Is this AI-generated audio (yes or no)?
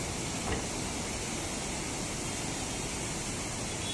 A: no